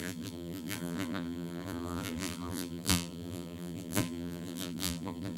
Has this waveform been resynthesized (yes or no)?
yes